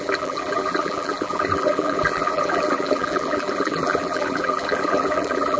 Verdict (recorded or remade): remade